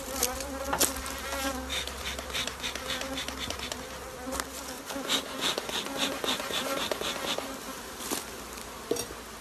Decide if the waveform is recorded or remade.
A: recorded